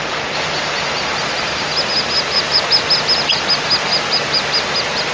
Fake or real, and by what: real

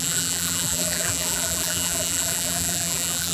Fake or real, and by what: fake, vocoder, BigVGAN v2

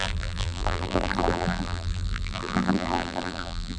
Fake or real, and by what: fake, vocoder, BigVGAN v2